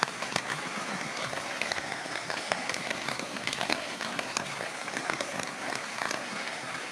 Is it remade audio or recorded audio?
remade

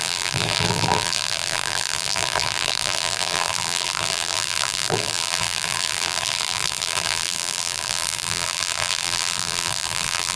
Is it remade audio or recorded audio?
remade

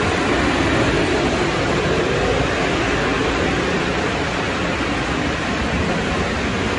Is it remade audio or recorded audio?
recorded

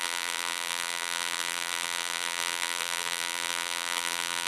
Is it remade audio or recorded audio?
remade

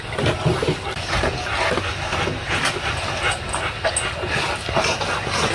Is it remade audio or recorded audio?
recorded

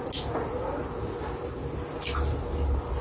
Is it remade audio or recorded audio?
recorded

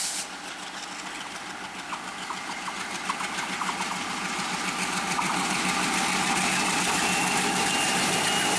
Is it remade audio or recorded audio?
recorded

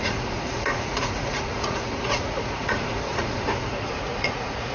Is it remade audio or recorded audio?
remade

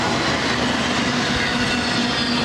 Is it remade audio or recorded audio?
recorded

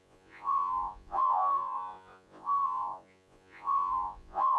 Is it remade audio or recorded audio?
remade